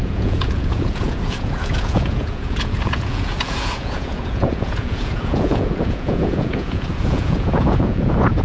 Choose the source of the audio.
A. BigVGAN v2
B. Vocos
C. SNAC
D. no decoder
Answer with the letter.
B